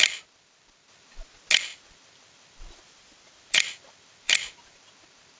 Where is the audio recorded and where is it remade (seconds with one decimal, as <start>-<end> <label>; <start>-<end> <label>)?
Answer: 0.0-1.7 recorded; 1.7-4.9 remade; 4.9-5.4 recorded